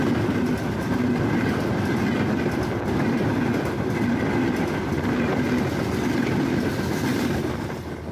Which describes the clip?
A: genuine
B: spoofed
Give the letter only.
A